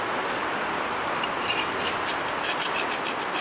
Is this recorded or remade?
recorded